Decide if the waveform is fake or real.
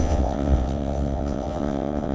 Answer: fake